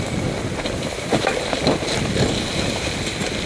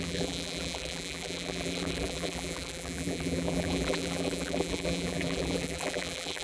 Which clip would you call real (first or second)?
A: first